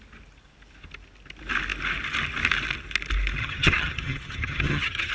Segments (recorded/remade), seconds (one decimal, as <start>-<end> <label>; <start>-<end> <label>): 0.0-3.4 recorded; 3.4-5.1 remade